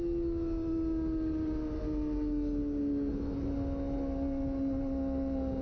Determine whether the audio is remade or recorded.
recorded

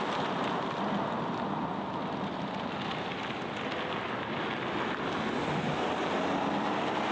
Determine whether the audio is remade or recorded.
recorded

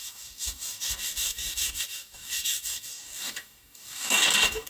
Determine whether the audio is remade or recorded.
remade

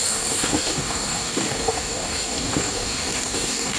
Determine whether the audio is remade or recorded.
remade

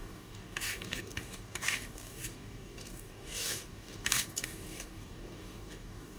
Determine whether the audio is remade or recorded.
remade